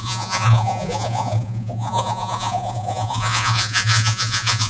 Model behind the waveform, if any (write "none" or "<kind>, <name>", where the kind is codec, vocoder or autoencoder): vocoder, Vocos